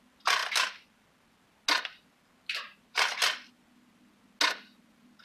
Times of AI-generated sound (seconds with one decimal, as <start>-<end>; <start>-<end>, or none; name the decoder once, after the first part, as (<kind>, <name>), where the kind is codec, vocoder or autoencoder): none